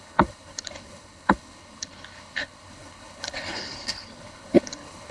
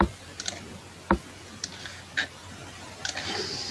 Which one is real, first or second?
second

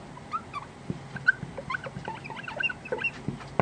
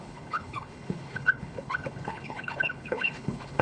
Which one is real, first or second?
first